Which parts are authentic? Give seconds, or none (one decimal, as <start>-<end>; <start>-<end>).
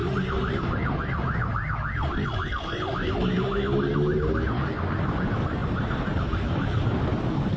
0.0-7.6